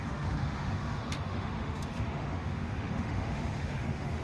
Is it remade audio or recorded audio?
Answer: remade